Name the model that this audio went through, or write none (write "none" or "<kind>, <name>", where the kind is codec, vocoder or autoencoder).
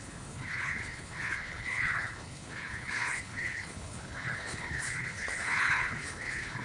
codec, HILCodec